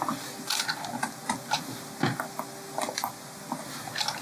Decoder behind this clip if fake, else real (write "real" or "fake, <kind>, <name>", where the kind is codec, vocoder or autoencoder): real